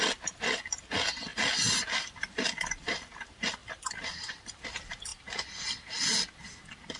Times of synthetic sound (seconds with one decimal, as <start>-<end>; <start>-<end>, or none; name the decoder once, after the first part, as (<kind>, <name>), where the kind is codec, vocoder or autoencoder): 1.3-2.8 (vocoder, BigVGAN v2); 3.6-4.6; 5.1-5.9